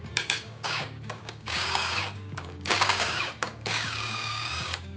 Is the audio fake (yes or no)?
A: yes